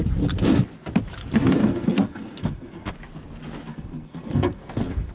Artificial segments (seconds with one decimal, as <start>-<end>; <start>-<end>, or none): 1.6-2.9; 3.7-5.1